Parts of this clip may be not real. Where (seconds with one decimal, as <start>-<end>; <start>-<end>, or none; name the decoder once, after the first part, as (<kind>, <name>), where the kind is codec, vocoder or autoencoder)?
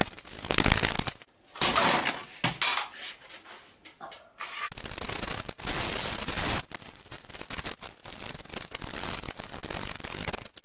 none